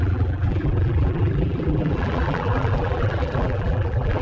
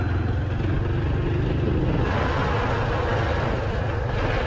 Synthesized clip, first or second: first